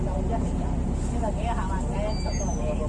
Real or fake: real